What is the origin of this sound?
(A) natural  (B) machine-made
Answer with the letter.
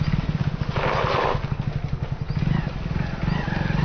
A